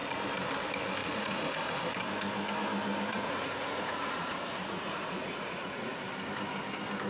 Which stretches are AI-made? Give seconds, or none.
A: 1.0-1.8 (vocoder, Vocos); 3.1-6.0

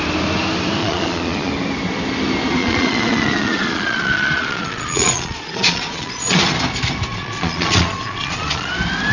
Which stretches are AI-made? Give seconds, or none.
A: 0.8-1.5 (vocoder, Vocos); 2.6-6.4; 7.1-8.7

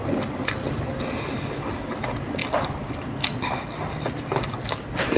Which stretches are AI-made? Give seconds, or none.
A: none

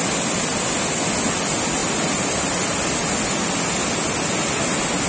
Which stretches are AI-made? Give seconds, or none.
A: none

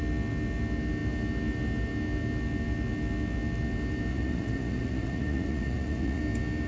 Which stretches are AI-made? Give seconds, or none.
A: 4.1-6.2 (vocoder, Vocos)

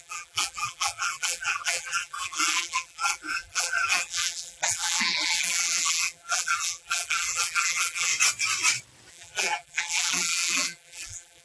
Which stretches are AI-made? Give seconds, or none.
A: 0.0-8.1 (vocoder, BigVGAN v2); 9.1-11.4

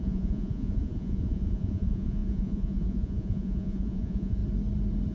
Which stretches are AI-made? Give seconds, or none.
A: 0.0-4.4 (vocoder, Vocos)

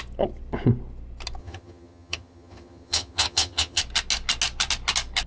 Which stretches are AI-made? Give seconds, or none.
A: 1.4-3.8 (vocoder, HiFi-GAN)